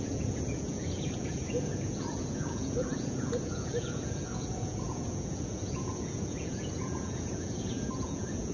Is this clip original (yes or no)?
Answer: no